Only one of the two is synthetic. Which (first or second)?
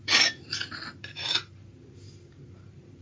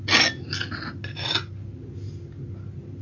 first